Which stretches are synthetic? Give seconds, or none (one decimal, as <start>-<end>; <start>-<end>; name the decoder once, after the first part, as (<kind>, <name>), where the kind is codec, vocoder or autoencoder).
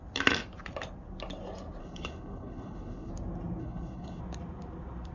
1.8-3.1 (codec, HILCodec); 3.6-4.2